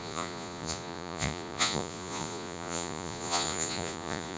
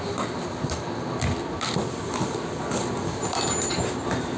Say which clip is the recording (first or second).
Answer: second